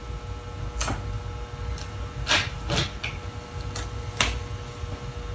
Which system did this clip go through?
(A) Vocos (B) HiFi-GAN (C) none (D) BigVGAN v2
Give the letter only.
C